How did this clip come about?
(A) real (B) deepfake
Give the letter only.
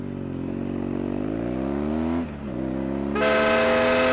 A